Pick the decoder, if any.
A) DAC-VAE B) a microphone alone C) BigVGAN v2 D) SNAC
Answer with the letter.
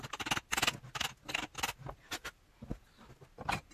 B